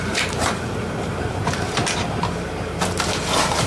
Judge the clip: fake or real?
fake